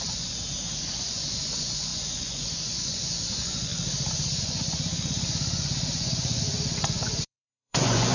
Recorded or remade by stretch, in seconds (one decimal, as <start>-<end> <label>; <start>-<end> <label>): 0.0-3.7 remade; 3.7-4.4 recorded; 4.4-8.1 remade